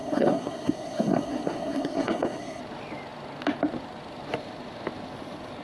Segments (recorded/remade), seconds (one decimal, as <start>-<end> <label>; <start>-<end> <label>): 0.0-2.6 remade; 2.6-5.6 recorded